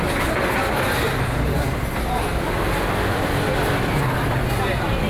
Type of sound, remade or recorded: recorded